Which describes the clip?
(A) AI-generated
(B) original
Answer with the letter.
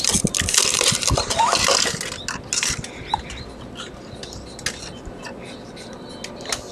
B